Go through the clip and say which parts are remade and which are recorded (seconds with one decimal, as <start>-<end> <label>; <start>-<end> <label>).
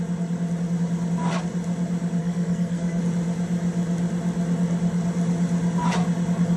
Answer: 0.0-2.2 recorded; 2.2-3.0 remade; 3.0-6.6 recorded